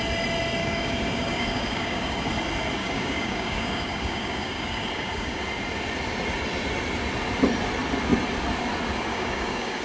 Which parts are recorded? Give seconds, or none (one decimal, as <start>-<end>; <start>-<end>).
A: 0.0-0.6; 2.3-2.8; 5.4-9.1